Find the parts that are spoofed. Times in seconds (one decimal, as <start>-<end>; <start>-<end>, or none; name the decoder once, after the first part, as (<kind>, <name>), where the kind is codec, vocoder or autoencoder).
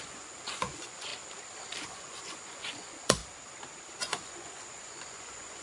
0.0-1.1 (vocoder, Vocos); 1.8-3.2; 4.0-5.6